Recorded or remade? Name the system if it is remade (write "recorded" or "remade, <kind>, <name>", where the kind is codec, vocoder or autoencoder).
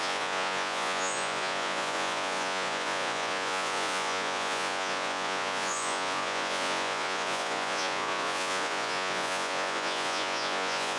remade, vocoder, Vocos